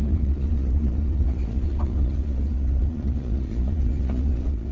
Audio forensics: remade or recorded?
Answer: remade